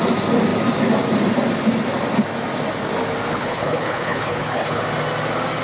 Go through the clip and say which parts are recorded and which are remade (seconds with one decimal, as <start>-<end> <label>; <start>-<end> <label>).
0.0-3.3 recorded; 3.3-4.8 remade; 4.8-5.6 recorded